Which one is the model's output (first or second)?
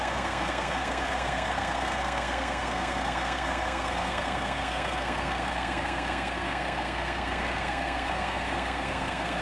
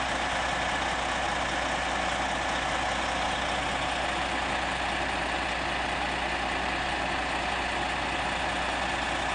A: first